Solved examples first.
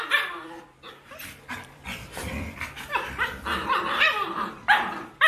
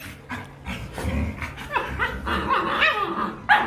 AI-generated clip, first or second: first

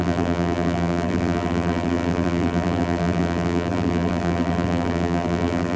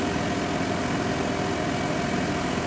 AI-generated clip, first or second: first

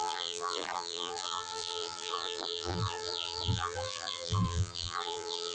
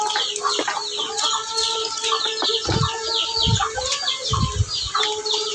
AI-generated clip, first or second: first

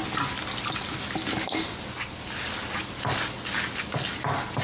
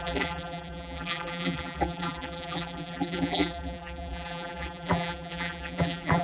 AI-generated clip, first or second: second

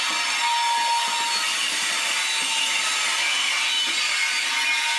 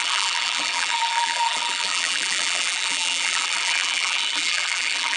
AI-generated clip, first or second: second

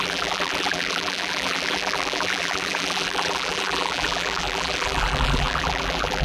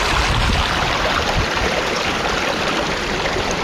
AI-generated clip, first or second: first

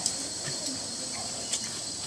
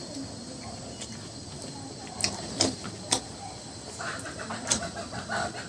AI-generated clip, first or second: first